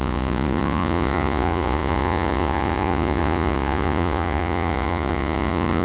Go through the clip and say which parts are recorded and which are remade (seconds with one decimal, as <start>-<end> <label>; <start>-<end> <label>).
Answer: 0.0-5.8 remade